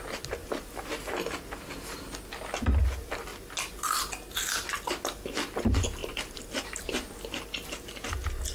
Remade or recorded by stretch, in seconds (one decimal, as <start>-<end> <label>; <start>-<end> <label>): 0.0-8.5 recorded

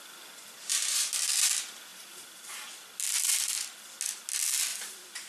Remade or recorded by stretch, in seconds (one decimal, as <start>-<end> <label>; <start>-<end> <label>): 0.0-0.4 recorded; 0.4-1.1 remade; 1.1-1.9 recorded; 1.9-2.7 remade; 2.7-4.7 recorded; 4.7-5.3 remade

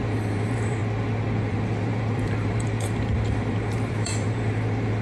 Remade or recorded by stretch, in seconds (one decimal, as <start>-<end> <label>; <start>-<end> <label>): 0.0-0.8 remade; 0.8-1.4 recorded; 1.4-5.0 remade

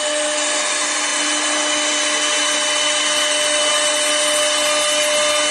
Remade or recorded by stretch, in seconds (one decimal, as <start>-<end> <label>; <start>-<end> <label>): 0.0-5.5 recorded

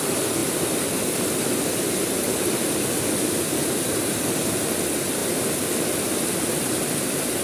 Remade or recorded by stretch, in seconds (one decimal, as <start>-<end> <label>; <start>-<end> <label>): 0.0-0.4 recorded; 0.4-4.8 remade; 4.8-5.2 recorded; 5.2-6.3 remade; 6.3-7.4 recorded

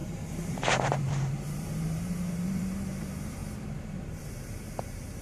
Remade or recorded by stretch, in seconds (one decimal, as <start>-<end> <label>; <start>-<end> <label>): 0.0-5.2 remade

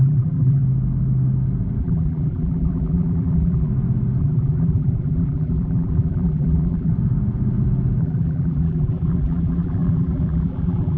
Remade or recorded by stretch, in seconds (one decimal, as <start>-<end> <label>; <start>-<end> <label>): 0.0-0.6 remade; 0.6-1.8 recorded; 1.8-3.7 remade; 3.7-4.2 recorded; 4.2-6.9 remade; 6.9-8.0 recorded; 8.0-11.0 remade

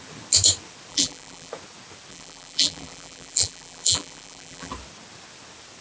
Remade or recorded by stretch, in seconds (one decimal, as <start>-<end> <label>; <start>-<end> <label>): 0.0-0.9 recorded; 0.9-1.5 remade; 1.5-2.1 recorded; 2.1-4.7 remade; 4.7-5.8 recorded